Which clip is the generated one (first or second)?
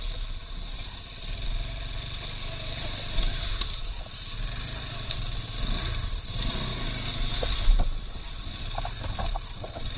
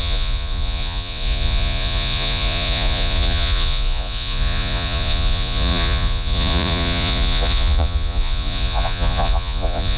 second